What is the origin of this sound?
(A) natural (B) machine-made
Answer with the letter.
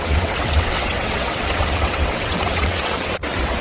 B